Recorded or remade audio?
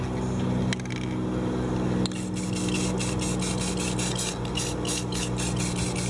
recorded